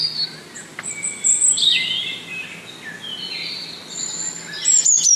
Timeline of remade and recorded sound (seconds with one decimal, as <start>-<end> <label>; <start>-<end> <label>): 0.0-5.2 recorded